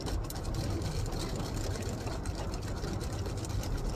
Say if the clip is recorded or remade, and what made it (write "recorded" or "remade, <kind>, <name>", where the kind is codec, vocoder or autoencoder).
recorded